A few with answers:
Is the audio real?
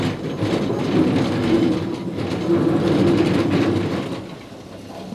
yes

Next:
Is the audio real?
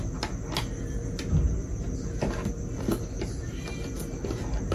yes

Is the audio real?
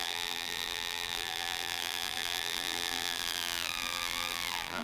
no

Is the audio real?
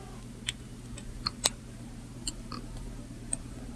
no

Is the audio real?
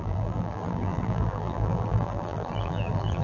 no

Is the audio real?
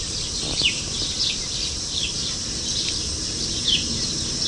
no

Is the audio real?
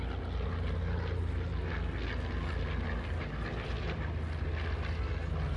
yes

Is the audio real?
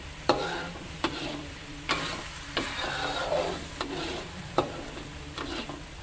no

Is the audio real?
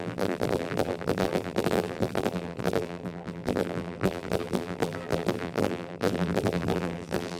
no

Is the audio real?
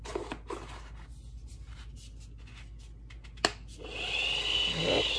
yes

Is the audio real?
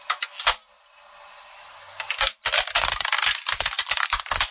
yes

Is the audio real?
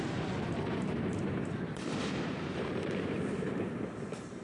no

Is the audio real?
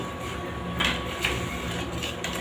yes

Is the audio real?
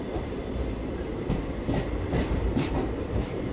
no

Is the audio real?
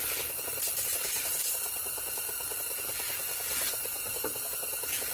no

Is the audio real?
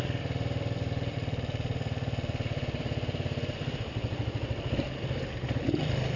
no